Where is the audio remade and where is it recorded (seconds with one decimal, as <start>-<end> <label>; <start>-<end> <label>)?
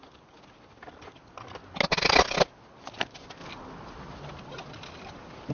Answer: 0.0-3.4 recorded; 3.4-5.5 remade